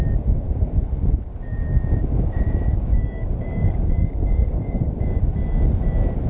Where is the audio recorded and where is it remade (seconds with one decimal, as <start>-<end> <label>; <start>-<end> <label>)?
0.0-1.3 recorded; 1.3-5.1 remade; 5.1-6.3 recorded